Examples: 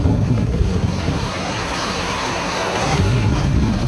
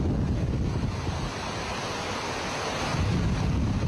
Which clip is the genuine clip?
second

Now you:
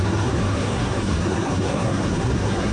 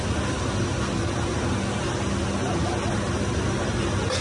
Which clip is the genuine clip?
second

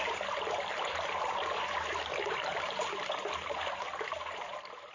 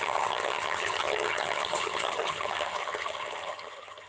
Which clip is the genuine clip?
first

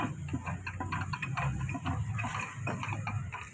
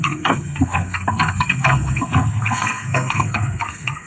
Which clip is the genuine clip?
first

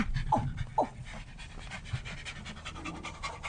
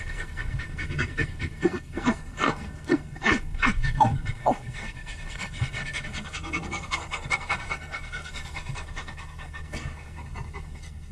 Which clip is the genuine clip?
first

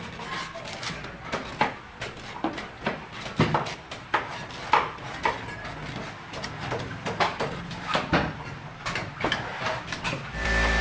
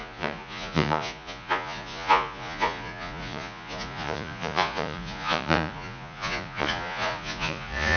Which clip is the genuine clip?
first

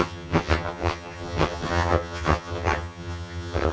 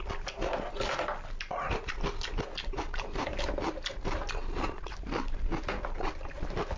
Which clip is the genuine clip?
second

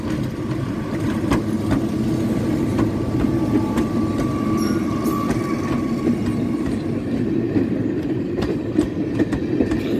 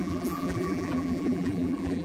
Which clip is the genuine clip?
first